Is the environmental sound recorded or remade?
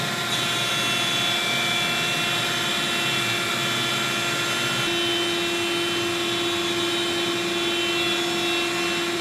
recorded